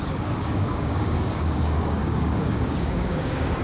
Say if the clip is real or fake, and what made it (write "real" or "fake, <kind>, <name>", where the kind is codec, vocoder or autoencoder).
fake, codec, DAC